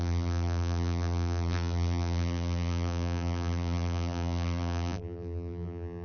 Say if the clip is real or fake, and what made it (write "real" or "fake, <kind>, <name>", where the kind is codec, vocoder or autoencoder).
fake, vocoder, BigVGAN v2